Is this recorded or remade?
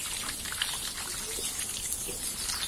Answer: recorded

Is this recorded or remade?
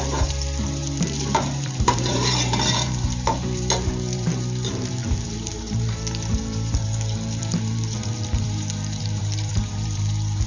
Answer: remade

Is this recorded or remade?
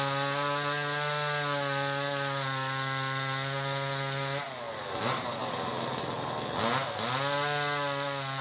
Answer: recorded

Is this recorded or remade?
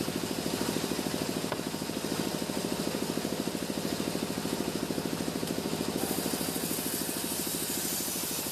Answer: recorded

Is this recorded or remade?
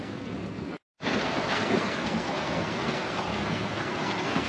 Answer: remade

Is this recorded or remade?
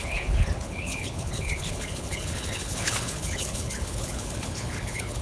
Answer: remade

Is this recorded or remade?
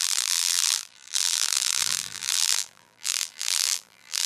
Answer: remade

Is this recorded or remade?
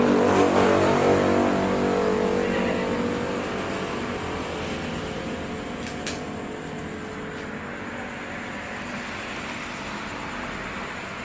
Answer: recorded